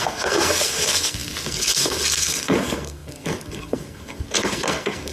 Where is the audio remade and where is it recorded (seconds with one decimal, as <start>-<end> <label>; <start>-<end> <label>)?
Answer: 0.0-5.1 remade